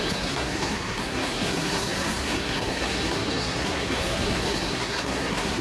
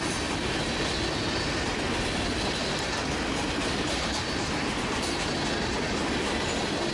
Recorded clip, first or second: second